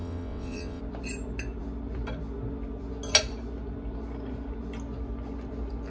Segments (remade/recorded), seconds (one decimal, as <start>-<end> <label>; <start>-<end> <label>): 0.0-0.8 remade; 0.8-5.9 recorded